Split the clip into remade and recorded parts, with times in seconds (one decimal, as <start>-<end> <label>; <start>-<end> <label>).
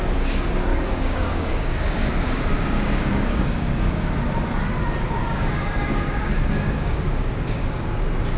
0.0-0.7 recorded; 0.7-4.1 remade; 4.1-5.2 recorded; 5.2-7.8 remade; 7.8-8.4 recorded